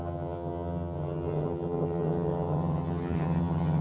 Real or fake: fake